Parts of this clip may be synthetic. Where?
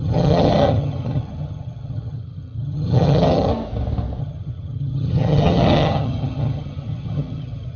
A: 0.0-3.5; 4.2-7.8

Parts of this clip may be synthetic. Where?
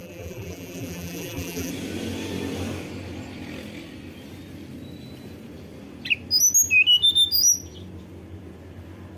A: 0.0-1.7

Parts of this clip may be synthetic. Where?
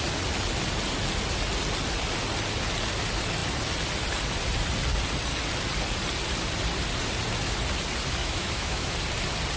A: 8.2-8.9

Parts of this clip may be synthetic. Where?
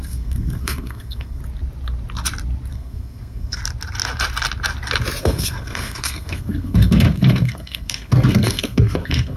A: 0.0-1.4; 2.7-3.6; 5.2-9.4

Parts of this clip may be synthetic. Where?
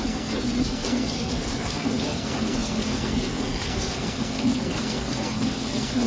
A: 0.0-6.1